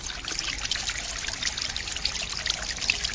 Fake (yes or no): no